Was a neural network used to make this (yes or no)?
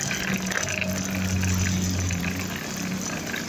no